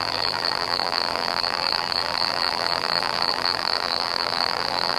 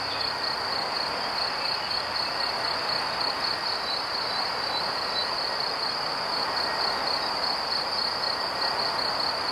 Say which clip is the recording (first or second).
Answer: second